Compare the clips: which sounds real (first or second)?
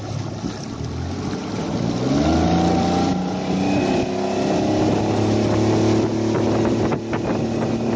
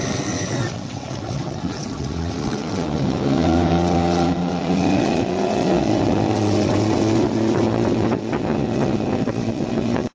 first